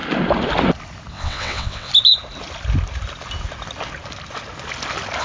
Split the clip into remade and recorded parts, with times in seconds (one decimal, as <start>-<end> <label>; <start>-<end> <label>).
0.0-1.1 recorded; 1.1-1.9 remade; 1.9-5.2 recorded